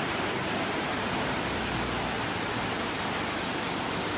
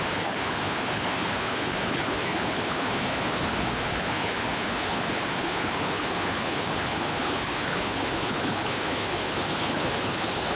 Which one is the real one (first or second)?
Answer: first